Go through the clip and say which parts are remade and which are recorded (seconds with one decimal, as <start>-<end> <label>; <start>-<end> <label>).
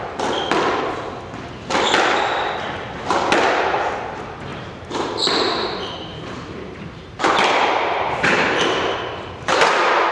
0.0-4.5 recorded; 4.5-9.6 remade; 9.6-10.1 recorded